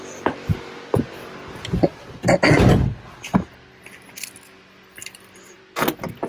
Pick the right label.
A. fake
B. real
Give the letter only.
B